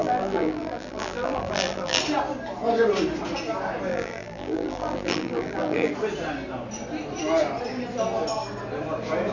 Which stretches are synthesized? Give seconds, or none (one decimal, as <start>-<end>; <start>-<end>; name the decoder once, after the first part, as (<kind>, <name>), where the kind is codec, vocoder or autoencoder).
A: 0.0-2.0 (vocoder, BigVGAN v2); 3.9-5.9